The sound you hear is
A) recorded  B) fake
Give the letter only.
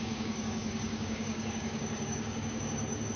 B